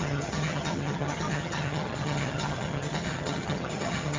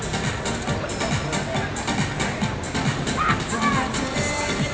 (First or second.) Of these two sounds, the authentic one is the second